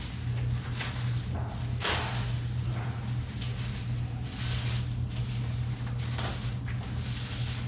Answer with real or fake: real